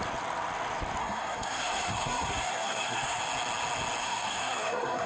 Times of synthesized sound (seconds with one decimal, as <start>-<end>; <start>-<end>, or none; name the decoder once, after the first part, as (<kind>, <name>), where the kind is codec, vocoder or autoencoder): 1.0-3.2 (codec, SNAC); 4.0-5.1

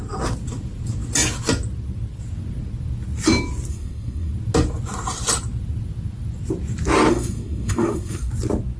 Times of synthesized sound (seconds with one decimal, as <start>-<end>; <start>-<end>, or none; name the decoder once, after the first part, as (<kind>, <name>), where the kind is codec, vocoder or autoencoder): 3.7-4.3 (codec, SNAC); 7.1-8.3

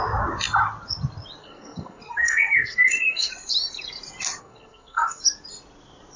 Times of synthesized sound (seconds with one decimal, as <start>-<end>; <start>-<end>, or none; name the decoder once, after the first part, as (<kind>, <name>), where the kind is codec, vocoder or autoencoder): 1.4-3.3 (codec, SNAC); 4.4-5.2